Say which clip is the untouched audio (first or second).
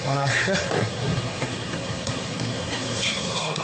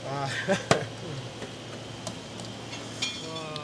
second